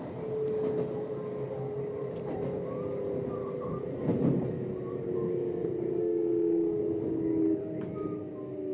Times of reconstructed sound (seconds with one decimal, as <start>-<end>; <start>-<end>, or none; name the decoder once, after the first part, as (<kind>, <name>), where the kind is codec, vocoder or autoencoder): 6.0-6.8 (autoencoder, DAC-VAE)